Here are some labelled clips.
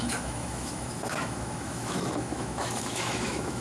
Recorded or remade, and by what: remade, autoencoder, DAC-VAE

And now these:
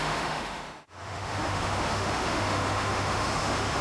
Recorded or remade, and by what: remade, autoencoder, DAC-VAE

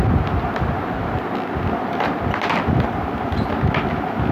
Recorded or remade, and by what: recorded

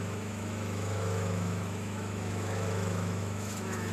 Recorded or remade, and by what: remade, autoencoder, DAC-VAE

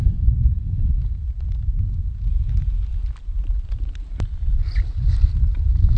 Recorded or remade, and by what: recorded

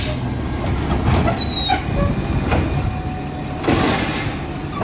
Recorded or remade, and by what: recorded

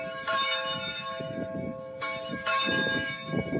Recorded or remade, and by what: remade, autoencoder, DAC-VAE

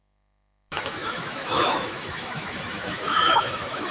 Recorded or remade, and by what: remade, autoencoder, DAC-VAE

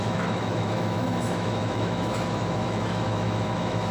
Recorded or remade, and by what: remade, autoencoder, DAC-VAE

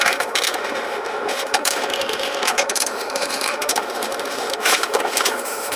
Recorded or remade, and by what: remade, autoencoder, DAC-VAE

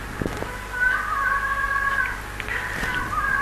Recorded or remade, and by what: recorded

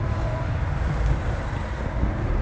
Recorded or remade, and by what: recorded